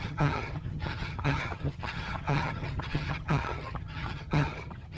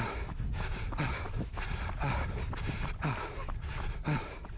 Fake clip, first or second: first